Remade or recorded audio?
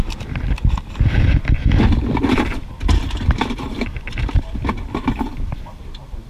remade